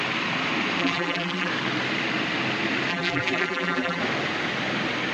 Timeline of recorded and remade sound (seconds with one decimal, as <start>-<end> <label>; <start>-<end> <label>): 0.0-0.8 recorded; 0.8-1.5 remade; 1.5-2.9 recorded; 2.9-4.0 remade; 4.0-5.1 recorded